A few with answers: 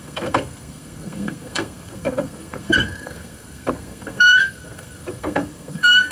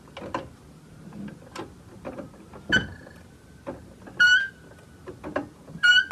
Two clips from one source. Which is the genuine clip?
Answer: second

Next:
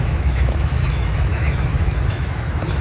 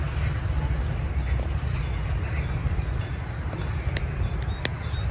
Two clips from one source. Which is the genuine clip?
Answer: second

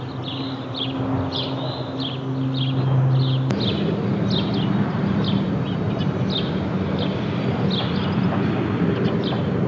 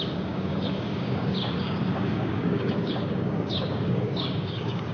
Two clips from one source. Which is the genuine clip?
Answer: first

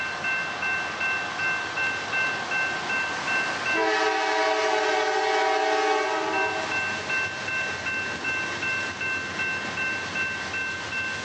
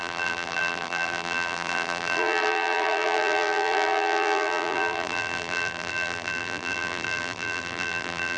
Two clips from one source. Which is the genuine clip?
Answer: first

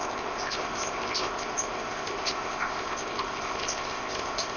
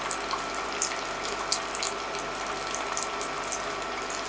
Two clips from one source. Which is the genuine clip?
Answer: second